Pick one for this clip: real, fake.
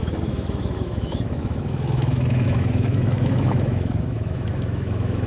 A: fake